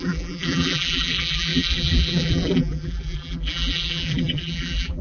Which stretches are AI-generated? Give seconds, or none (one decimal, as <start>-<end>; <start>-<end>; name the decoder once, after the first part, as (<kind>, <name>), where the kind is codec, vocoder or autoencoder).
0.0-5.0 (vocoder, BigVGAN v2)